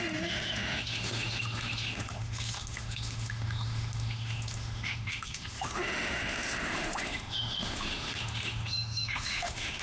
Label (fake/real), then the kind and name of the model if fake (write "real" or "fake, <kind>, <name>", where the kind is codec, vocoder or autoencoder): fake, autoencoder, DAC-VAE